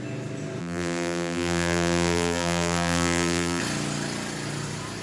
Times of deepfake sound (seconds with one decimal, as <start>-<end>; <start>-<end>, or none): 0.6-3.6